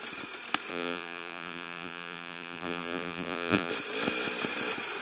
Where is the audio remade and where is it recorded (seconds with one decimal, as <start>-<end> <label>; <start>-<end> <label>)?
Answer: 0.0-0.7 recorded; 0.7-3.7 remade; 3.7-5.0 recorded